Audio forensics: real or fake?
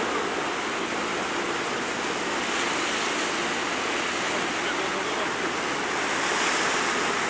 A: real